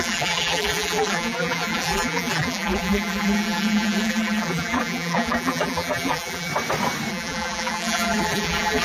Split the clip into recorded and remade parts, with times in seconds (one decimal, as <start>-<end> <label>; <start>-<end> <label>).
0.0-6.5 remade; 6.5-7.1 recorded; 7.1-8.8 remade